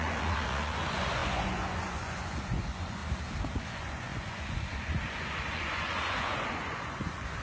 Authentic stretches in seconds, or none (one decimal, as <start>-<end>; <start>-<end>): 3.0-3.6